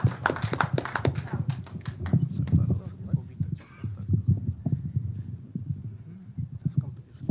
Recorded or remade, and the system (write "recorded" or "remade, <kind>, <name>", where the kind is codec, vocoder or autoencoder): recorded